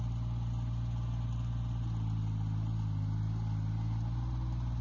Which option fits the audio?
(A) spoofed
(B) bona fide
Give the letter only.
B